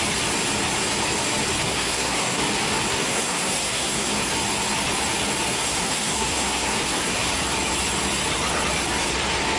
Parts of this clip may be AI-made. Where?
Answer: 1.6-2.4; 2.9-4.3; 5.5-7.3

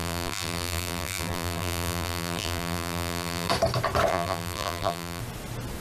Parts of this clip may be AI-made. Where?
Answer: 0.0-3.5; 4.1-5.2

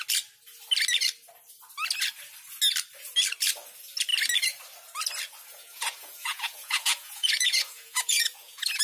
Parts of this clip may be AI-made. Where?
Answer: 5.5-8.8

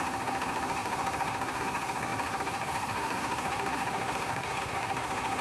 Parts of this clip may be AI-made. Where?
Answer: 0.0-5.4